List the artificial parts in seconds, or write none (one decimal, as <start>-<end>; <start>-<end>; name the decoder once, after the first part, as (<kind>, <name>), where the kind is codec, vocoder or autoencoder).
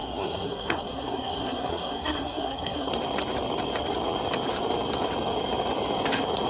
0.0-2.9 (codec, SNAC)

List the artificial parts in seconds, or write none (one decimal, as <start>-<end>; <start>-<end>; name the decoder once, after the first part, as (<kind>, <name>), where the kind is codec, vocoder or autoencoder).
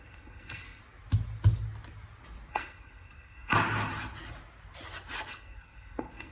0.0-0.8 (codec, SNAC); 2.5-3.5; 5.3-6.3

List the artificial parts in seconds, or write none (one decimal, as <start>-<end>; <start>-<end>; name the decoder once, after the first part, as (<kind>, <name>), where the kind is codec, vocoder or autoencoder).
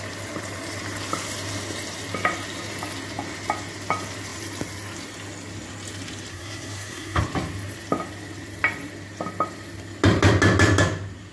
6.3-7.2 (codec, SNAC)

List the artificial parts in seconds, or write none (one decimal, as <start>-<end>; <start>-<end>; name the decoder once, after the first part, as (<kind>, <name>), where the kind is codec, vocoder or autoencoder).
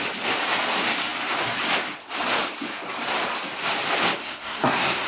4.2-5.1 (codec, SNAC)